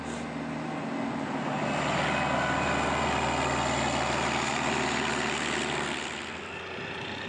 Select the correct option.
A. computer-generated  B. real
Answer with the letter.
B